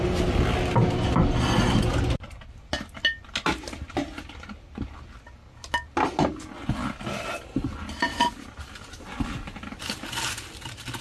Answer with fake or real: real